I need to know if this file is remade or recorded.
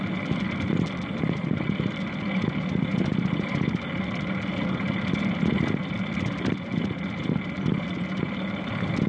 recorded